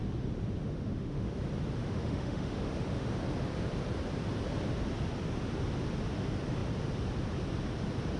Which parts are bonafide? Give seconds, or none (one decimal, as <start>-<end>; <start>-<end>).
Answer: 0.0-0.6; 1.3-1.8; 3.1-8.2